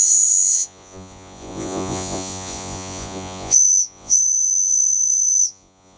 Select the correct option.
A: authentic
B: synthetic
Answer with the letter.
B